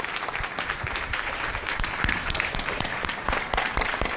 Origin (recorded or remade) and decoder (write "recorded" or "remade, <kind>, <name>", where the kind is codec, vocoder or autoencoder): remade, vocoder, BigVGAN v2